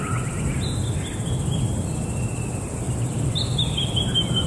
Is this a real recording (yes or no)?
yes